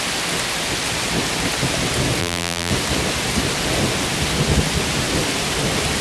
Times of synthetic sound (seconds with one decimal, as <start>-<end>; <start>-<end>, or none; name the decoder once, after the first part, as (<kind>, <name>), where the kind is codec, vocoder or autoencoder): 2.2-2.7 (vocoder, BigVGAN v2)